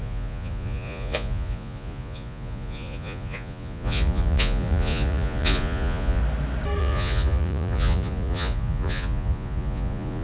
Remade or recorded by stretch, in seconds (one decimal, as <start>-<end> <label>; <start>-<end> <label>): 0.0-6.2 remade; 6.2-6.8 recorded; 6.8-10.2 remade